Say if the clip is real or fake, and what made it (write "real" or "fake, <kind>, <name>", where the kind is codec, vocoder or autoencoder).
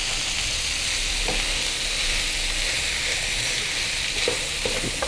real